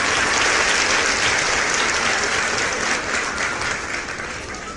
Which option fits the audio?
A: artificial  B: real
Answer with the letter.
B